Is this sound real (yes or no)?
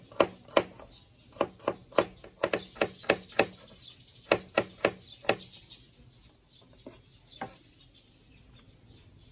yes